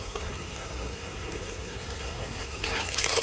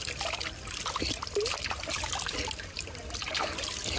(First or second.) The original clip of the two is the second